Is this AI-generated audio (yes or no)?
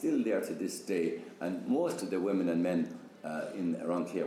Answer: no